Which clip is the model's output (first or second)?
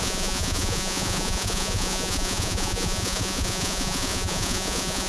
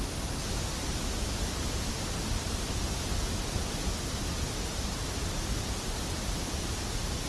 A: first